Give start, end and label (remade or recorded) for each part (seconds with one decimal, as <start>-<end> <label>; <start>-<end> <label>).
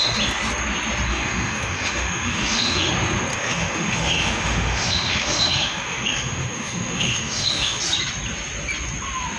0.0-1.1 recorded; 1.1-2.9 remade; 2.9-3.3 recorded; 3.3-7.8 remade; 7.8-9.4 recorded